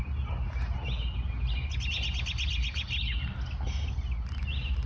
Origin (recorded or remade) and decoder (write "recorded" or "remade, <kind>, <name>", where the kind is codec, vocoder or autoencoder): recorded